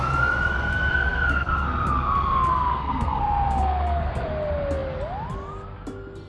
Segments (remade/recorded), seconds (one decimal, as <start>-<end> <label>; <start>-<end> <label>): 0.0-0.5 recorded; 0.5-4.3 remade; 4.3-6.3 recorded